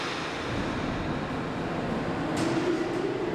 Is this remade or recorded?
recorded